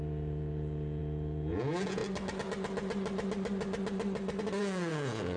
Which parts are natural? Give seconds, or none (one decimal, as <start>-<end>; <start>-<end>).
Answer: 2.0-4.6